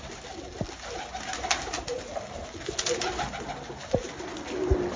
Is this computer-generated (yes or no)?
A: no